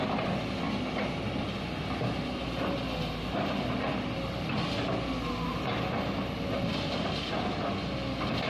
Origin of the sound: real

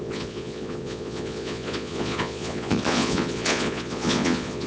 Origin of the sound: fake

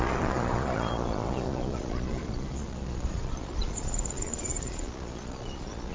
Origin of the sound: fake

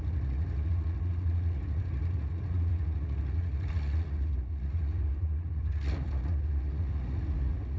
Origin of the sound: fake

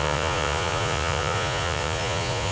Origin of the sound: fake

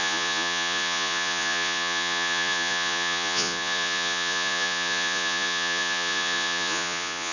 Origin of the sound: fake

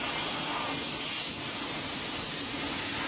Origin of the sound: real